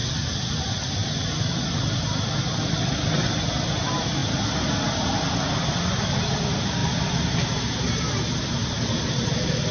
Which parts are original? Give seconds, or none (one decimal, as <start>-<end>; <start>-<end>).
0.0-9.7